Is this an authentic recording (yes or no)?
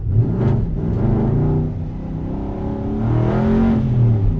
yes